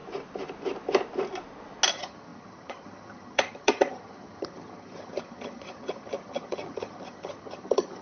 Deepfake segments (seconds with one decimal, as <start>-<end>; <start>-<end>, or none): 1.9-8.0